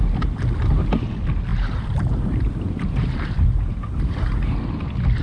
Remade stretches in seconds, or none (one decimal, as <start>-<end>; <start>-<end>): 1.5-4.6